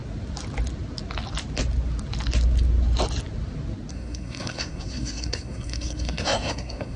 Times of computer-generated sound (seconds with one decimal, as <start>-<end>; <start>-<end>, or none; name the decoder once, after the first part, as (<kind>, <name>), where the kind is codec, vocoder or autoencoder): 3.9-7.0 (codec, SNAC)